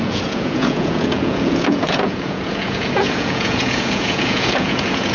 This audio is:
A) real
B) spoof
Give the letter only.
B